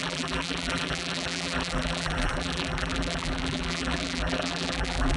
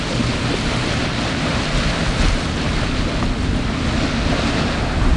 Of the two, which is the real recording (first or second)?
second